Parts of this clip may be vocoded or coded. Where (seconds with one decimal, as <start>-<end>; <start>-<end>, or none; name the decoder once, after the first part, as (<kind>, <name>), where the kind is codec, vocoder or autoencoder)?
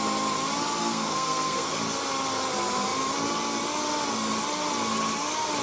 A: 0.8-1.8 (codec, SNAC)